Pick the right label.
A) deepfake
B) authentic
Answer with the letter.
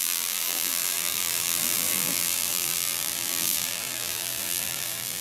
A